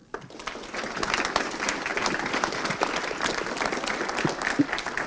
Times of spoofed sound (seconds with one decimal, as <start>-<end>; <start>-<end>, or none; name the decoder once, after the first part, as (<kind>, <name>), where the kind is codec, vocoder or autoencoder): none